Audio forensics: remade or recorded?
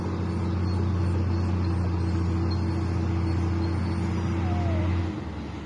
recorded